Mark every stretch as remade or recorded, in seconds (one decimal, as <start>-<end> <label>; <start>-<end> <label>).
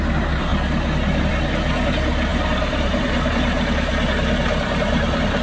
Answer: 0.0-0.5 remade; 0.5-1.3 recorded; 1.3-5.4 remade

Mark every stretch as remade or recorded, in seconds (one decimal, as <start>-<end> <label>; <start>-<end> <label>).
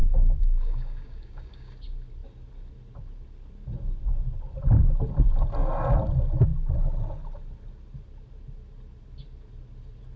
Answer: 0.0-1.7 remade; 1.7-10.2 recorded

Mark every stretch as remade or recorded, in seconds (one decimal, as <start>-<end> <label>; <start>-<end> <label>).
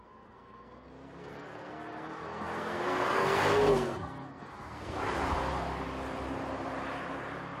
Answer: 0.0-5.0 remade; 5.0-7.6 recorded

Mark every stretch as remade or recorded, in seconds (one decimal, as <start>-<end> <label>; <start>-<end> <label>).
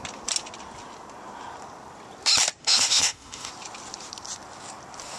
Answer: 0.0-2.6 recorded; 2.6-3.5 remade; 3.5-5.2 recorded